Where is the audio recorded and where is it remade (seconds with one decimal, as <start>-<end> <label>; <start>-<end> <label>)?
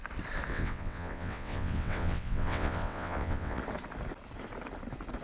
0.0-0.5 recorded; 0.5-3.6 remade; 3.6-5.2 recorded